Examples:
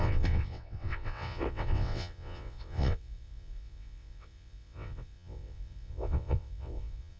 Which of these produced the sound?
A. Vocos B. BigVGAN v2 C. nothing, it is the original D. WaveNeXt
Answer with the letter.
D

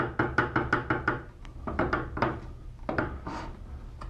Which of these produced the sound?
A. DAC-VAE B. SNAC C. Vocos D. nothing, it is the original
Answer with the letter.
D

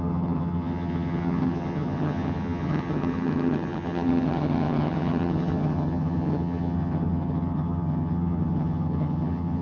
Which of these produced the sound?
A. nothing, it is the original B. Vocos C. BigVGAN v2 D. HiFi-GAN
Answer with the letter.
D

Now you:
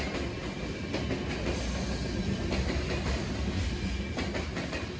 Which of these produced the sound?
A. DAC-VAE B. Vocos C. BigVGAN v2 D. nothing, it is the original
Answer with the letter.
D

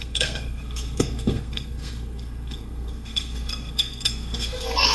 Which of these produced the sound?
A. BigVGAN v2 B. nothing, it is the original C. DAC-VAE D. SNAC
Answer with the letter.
D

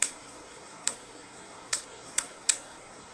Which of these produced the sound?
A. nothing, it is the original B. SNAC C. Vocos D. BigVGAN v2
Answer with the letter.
B